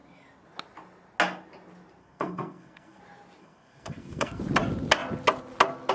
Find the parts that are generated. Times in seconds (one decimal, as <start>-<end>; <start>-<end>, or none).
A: 2.0-3.0; 3.4-4.4